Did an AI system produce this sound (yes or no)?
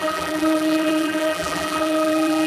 yes